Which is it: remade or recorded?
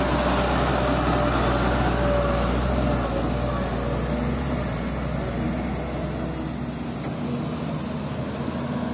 recorded